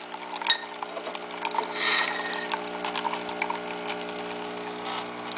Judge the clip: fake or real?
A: real